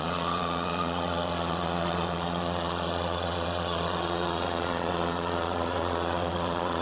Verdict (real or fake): fake